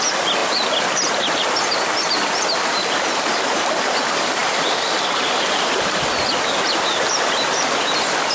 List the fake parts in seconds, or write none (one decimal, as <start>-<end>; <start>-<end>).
none